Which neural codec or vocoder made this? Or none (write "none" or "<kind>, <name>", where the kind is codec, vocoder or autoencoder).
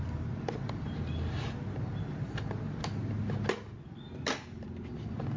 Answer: none